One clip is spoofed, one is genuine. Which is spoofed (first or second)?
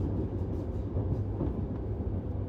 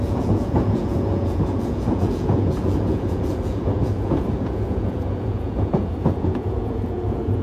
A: second